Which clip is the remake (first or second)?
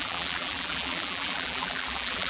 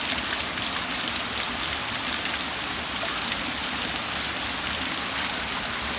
first